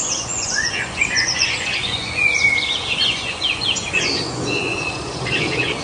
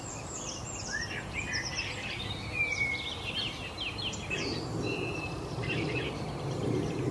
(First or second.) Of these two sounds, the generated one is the first